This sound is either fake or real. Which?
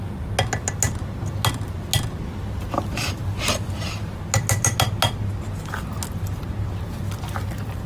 real